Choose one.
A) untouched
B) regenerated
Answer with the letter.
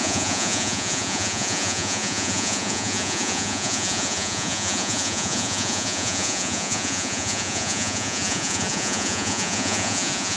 B